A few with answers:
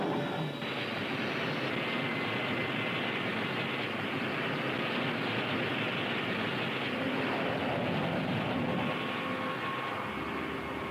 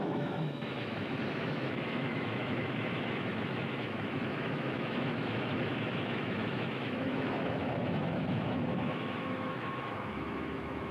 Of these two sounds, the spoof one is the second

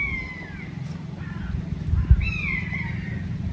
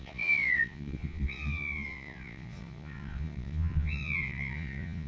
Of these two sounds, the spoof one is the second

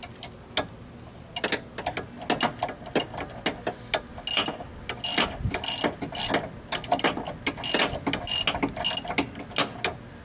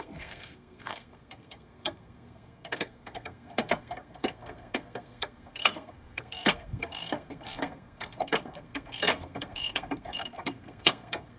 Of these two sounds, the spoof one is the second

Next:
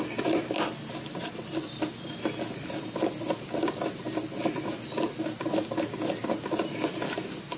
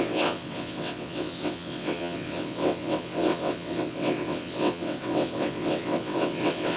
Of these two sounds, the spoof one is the second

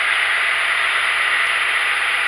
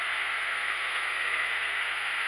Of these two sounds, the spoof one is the second